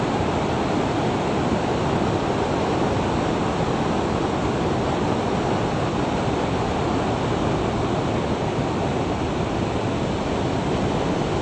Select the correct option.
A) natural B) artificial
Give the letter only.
A